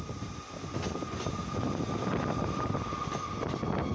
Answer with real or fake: real